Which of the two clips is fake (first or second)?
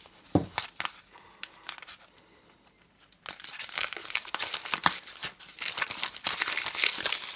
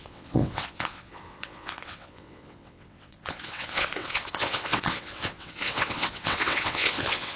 second